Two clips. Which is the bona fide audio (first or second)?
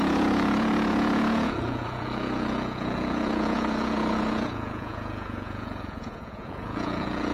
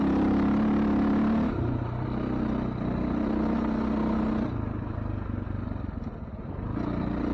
second